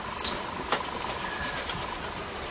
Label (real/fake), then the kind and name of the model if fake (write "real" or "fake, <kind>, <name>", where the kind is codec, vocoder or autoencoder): real